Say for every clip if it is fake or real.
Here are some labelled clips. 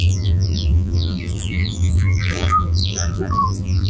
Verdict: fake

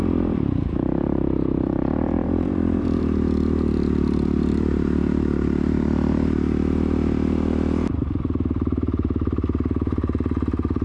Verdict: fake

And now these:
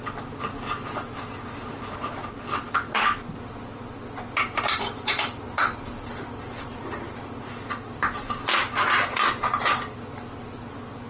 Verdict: real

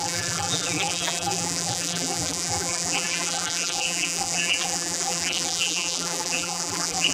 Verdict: fake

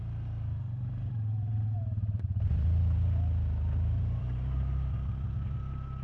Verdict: fake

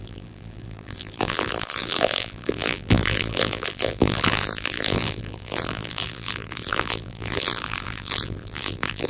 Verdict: fake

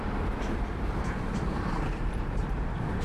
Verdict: fake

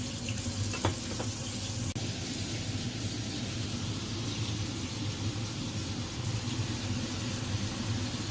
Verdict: real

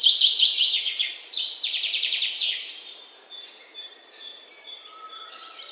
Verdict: fake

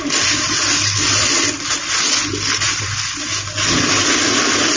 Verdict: real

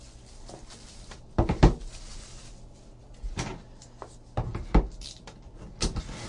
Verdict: real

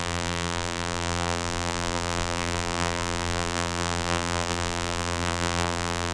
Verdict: fake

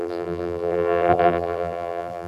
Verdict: fake